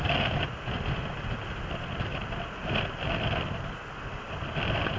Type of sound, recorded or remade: recorded